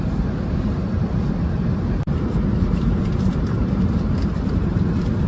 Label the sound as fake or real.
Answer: fake